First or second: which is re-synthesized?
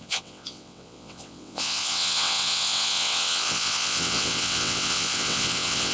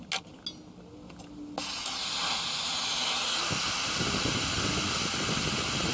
first